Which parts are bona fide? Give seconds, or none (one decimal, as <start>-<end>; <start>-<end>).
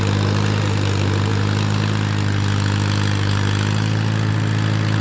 0.0-5.0